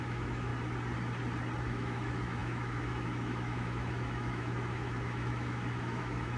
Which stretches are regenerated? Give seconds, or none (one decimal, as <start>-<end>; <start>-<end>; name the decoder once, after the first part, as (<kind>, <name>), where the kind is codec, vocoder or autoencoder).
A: 0.0-0.5 (autoencoder, DAC-VAE); 1.7-6.4